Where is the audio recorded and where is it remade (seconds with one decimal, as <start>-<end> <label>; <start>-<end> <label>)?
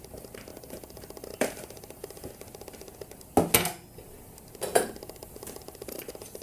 0.0-0.5 recorded; 0.5-2.3 remade; 2.3-4.7 recorded; 4.7-5.6 remade; 5.6-6.4 recorded